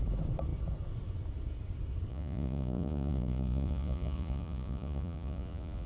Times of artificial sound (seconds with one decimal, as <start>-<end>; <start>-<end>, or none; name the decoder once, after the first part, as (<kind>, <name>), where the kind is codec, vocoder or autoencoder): 2.1-5.9 (vocoder, Vocos)